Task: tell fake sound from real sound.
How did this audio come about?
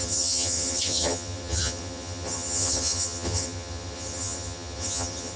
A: fake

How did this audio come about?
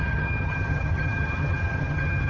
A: fake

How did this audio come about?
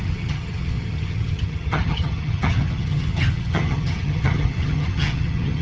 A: fake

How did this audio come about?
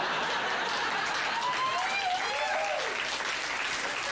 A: real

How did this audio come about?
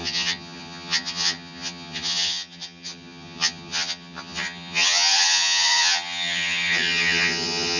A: fake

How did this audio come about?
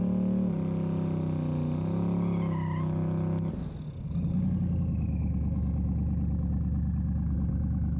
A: real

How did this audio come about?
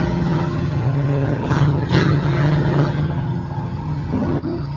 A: fake